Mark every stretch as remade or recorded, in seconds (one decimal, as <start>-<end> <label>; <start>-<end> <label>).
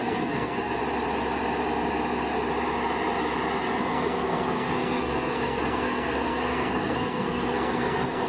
0.0-0.8 remade; 0.8-3.8 recorded; 3.8-8.3 remade